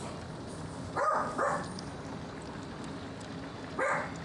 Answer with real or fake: real